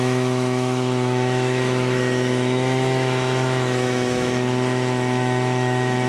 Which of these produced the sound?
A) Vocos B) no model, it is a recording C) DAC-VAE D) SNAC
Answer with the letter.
C